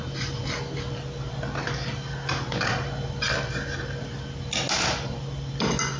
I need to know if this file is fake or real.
real